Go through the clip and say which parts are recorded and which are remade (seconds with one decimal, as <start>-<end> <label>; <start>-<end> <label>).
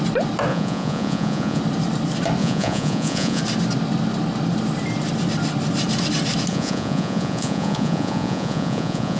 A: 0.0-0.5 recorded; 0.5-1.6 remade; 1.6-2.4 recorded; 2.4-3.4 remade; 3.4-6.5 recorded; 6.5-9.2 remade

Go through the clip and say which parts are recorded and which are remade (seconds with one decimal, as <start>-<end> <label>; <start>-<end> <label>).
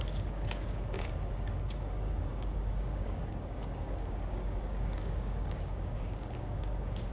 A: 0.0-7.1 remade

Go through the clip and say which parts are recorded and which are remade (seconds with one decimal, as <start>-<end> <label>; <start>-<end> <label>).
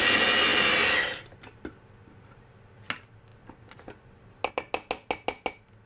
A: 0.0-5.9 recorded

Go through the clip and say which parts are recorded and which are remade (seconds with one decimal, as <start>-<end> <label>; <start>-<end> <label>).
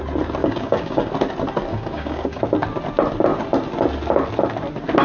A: 0.0-0.4 recorded; 0.4-1.1 remade; 1.1-1.7 recorded; 1.7-2.4 remade; 2.4-5.0 recorded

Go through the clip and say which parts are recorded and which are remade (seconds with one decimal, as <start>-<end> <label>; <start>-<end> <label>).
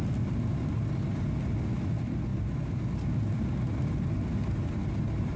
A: 0.0-5.4 recorded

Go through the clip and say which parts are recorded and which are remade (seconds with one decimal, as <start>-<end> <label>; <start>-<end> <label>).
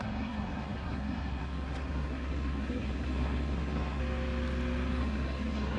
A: 0.0-4.0 remade; 4.0-5.0 recorded; 5.0-5.8 remade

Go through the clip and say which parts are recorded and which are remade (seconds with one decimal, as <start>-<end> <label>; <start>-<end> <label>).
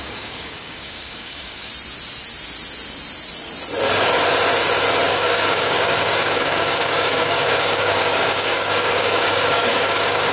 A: 0.0-1.7 remade; 1.7-5.1 recorded; 5.1-10.3 remade